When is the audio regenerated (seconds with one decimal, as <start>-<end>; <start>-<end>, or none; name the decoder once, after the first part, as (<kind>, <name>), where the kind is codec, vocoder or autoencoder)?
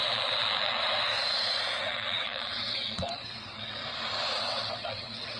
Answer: 0.0-0.8 (vocoder, WaveNeXt); 1.8-3.8; 4.4-5.4